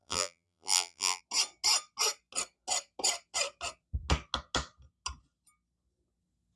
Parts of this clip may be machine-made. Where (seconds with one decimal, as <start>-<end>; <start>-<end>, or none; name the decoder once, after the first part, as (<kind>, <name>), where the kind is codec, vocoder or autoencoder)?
0.0-1.2 (vocoder, BigVGAN v2)